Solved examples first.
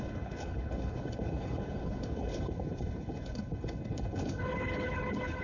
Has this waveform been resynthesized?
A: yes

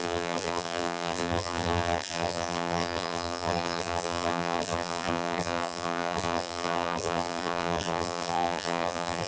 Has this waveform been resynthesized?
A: yes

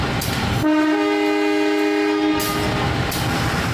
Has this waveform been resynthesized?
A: no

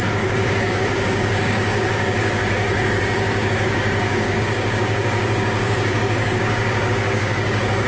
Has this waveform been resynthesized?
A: yes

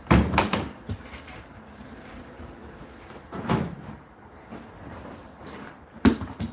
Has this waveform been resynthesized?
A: yes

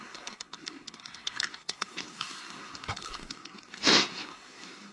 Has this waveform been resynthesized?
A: yes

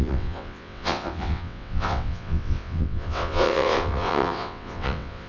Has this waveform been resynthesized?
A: yes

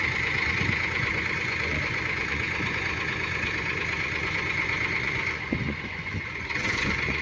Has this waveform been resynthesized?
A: yes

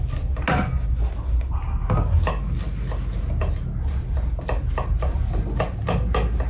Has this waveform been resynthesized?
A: no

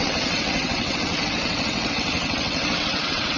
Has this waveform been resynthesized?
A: yes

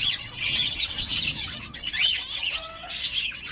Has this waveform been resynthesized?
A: yes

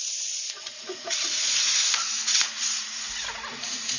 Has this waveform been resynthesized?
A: yes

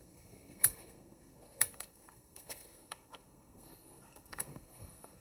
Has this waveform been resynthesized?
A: yes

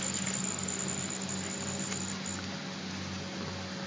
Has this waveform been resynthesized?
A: no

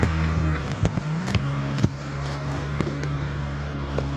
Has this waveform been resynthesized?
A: yes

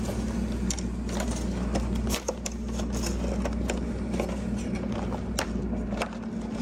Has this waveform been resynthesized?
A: no